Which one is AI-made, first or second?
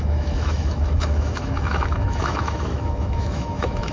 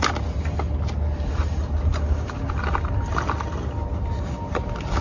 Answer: first